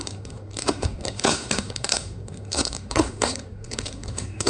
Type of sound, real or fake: fake